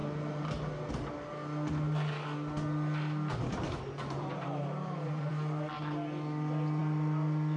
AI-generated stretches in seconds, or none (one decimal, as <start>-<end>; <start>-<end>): 0.0-0.9; 3.3-5.3